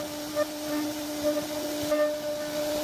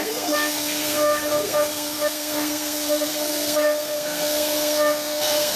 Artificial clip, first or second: second